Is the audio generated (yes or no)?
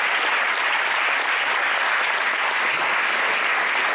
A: no